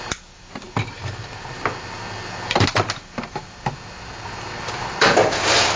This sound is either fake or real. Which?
real